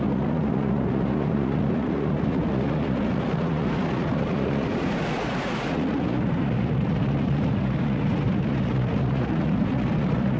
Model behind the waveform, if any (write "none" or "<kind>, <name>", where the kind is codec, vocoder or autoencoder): vocoder, Vocos